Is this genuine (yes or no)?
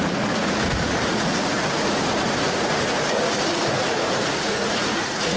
no